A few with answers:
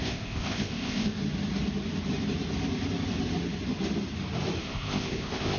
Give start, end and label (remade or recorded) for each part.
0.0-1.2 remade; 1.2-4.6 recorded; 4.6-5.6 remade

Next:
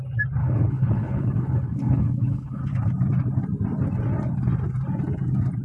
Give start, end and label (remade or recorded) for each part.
0.0-0.4 recorded; 0.4-2.6 remade; 2.6-5.6 recorded

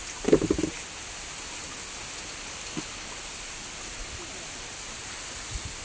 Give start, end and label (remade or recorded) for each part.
0.0-5.8 recorded

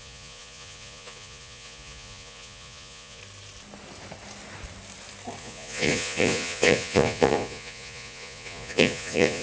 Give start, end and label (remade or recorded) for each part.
0.0-3.2 remade; 3.2-5.4 recorded; 5.4-9.4 remade

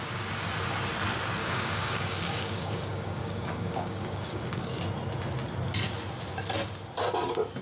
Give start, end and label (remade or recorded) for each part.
0.0-1.4 recorded; 1.4-4.8 remade; 4.8-7.6 recorded

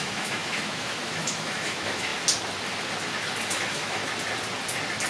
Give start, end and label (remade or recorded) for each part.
0.0-2.1 remade; 2.1-3.5 recorded; 3.5-4.0 remade; 4.0-5.1 recorded

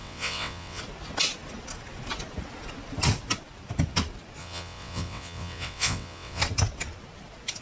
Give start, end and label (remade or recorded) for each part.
0.0-0.8 remade; 0.8-4.4 recorded; 4.4-6.4 remade; 6.4-7.6 recorded

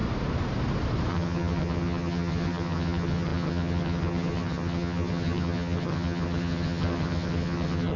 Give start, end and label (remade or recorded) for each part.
0.0-1.1 recorded; 1.1-8.0 remade